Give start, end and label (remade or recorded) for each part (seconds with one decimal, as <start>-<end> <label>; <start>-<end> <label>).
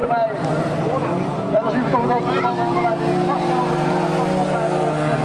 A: 0.0-2.9 remade; 2.9-5.2 recorded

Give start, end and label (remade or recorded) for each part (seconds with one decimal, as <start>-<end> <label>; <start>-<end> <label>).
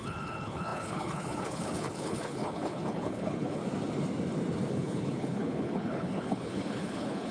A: 0.0-3.6 remade; 3.6-4.7 recorded; 4.7-7.3 remade